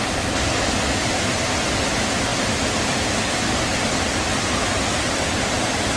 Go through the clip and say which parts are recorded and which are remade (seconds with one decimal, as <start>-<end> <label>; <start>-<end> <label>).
0.0-6.0 recorded